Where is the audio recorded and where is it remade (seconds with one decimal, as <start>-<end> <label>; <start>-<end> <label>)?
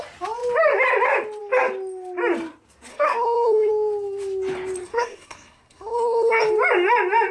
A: 0.0-2.9 recorded; 2.9-3.7 remade; 3.7-4.8 recorded; 4.8-6.4 remade; 6.4-7.3 recorded